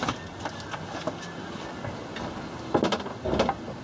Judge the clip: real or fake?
real